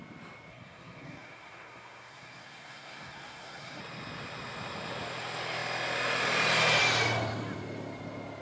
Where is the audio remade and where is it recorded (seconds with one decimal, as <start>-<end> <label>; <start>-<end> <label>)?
0.0-0.5 recorded; 0.5-3.8 remade; 3.8-8.4 recorded